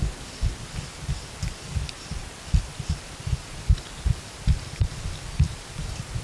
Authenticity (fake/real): real